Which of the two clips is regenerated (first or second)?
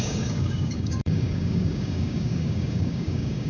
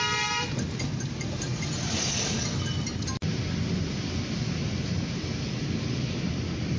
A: first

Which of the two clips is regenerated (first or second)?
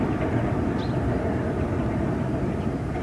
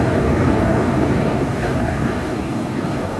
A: second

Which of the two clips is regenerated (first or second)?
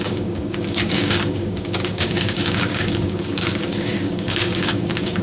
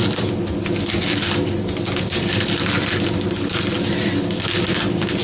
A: first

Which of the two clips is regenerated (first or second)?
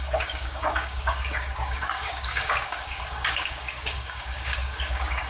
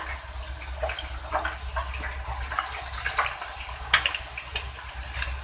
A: first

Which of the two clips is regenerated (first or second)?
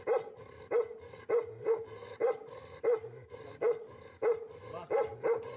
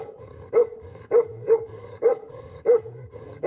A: second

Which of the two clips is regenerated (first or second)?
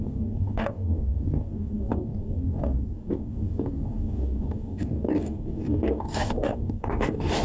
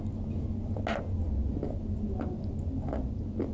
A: first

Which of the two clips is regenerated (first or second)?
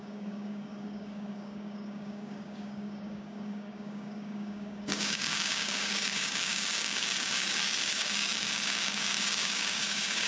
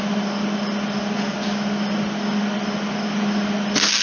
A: first